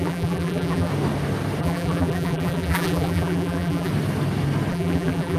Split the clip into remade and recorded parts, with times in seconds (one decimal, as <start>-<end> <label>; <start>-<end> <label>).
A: 0.0-0.9 remade; 0.9-1.6 recorded; 1.6-3.9 remade; 3.9-4.7 recorded; 4.7-5.4 remade